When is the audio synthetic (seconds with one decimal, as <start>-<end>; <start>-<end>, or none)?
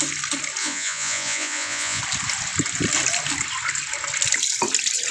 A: 0.6-2.0